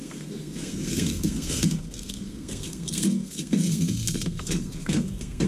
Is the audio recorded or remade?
remade